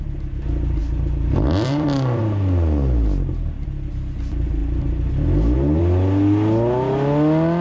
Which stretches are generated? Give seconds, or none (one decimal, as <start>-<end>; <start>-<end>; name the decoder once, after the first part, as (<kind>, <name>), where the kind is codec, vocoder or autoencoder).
0.8-2.2 (vocoder, BigVGAN v2)